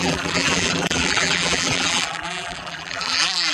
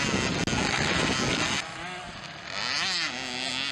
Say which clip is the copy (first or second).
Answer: first